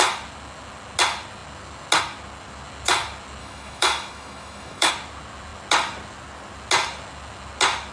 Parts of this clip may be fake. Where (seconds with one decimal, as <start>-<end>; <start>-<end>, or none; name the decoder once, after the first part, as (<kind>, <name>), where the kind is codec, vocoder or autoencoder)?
3.4-4.9 (autoencoder, DAC-VAE)